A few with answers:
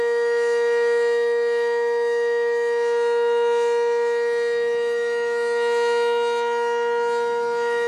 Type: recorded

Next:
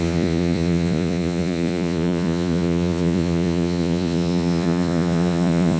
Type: remade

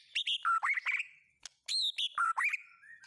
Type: recorded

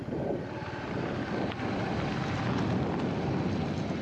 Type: recorded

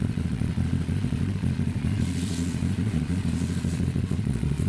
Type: remade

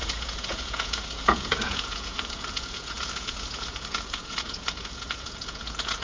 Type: remade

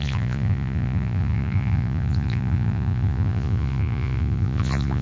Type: remade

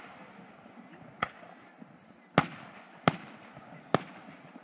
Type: recorded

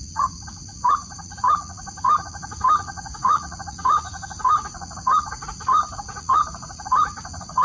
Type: remade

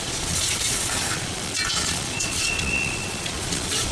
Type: remade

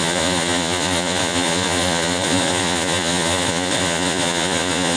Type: remade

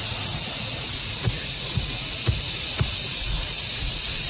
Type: remade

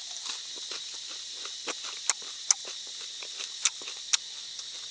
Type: recorded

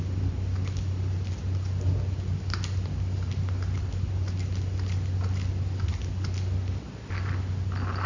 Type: recorded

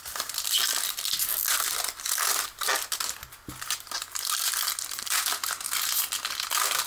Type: recorded